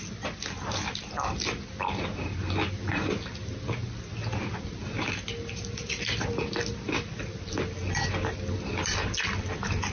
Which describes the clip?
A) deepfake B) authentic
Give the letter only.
B